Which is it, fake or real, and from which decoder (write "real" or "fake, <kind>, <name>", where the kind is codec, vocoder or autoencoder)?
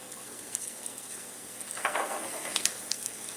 fake, codec, SNAC